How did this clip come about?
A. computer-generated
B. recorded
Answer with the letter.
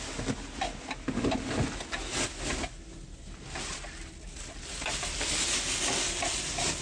B